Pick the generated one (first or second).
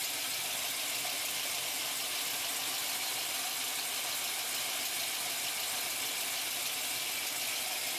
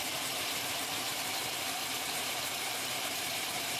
second